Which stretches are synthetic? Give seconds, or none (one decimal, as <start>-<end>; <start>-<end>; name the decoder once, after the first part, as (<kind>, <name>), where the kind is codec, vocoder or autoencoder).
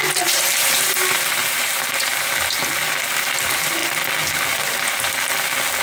0.0-2.6 (vocoder, BigVGAN v2); 3.4-3.8